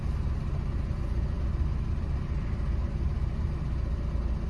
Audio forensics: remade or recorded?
recorded